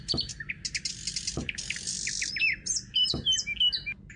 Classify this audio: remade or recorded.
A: recorded